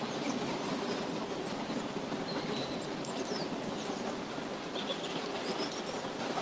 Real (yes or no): yes